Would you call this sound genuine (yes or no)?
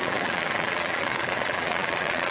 no